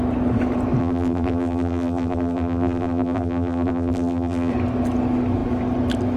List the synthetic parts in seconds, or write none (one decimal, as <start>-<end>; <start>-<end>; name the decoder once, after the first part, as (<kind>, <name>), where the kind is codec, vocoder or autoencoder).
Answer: 0.8-4.5 (vocoder, BigVGAN v2)